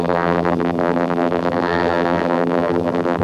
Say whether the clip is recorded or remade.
remade